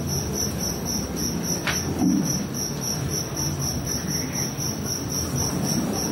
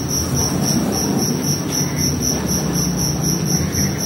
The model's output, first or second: first